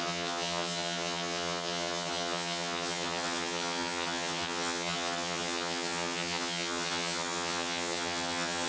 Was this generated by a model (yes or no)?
yes